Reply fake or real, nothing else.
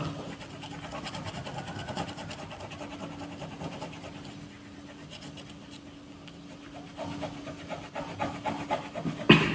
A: real